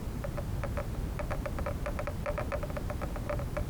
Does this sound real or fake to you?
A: real